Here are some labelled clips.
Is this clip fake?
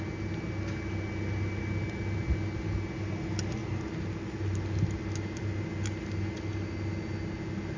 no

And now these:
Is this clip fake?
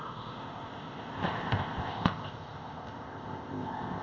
yes